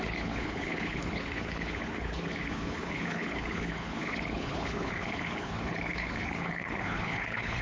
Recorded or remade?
remade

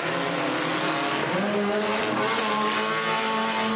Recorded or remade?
recorded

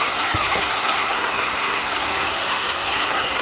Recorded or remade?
remade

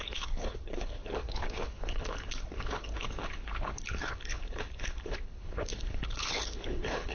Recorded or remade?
remade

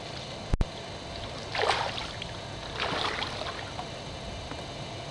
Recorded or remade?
recorded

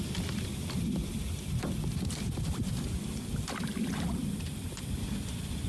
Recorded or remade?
remade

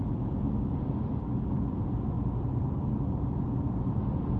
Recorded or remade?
recorded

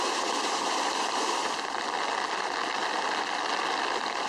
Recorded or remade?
recorded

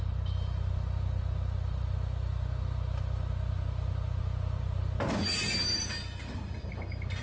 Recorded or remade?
recorded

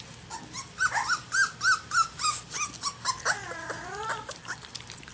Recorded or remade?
recorded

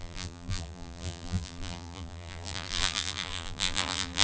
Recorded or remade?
remade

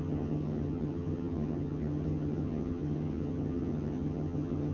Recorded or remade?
remade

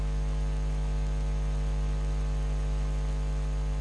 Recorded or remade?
recorded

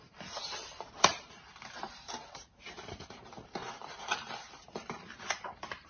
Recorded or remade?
remade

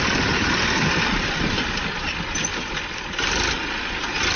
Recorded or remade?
remade